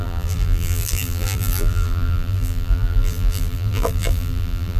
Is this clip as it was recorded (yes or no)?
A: no